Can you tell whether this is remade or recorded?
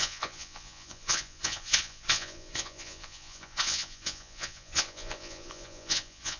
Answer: remade